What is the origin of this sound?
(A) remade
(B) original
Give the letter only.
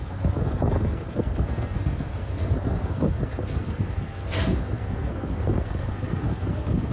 A